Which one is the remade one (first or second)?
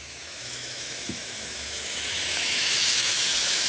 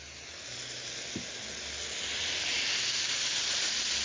first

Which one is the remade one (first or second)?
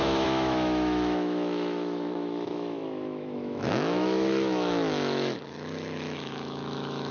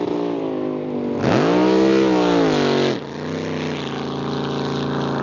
first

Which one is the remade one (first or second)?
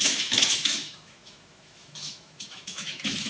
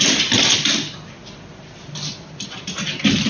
first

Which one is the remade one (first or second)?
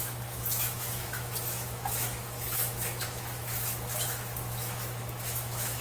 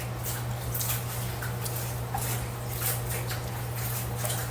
first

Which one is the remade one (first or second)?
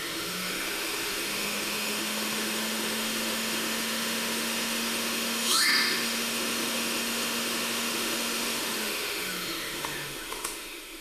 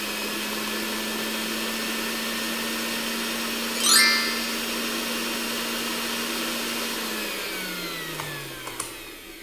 first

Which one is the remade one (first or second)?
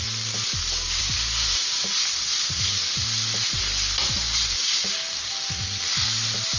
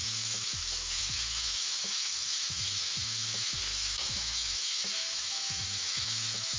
second